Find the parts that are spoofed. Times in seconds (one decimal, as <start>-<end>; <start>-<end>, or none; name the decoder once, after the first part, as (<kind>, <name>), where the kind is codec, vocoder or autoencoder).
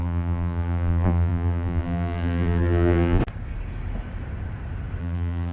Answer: 0.0-3.2 (vocoder, BigVGAN v2); 5.0-5.5